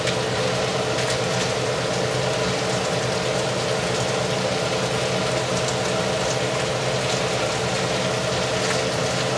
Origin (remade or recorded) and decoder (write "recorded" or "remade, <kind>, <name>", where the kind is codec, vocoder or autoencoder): recorded